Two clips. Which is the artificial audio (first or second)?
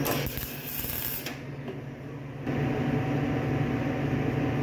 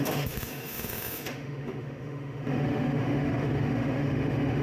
second